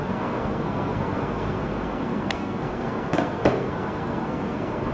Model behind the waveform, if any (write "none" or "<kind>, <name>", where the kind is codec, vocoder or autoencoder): codec, SNAC